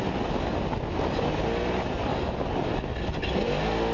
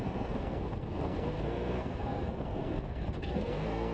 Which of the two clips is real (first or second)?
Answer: first